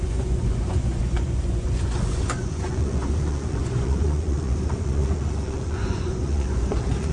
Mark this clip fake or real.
fake